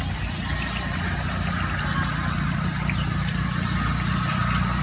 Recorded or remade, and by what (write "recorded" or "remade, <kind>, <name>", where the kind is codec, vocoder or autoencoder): recorded